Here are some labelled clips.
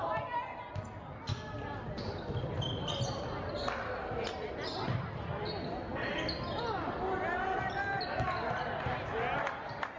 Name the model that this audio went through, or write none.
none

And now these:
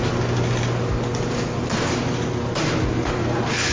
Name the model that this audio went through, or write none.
none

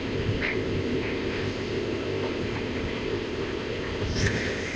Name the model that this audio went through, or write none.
codec, ZipCodec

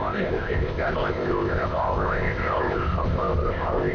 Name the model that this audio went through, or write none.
codec, ZipCodec